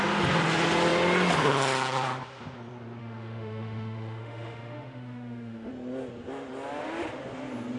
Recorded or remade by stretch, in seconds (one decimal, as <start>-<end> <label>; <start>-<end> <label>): 0.0-3.0 recorded; 3.0-5.7 remade; 5.7-7.8 recorded